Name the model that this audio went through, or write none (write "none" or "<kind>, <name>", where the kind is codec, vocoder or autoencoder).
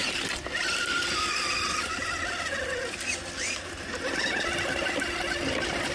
none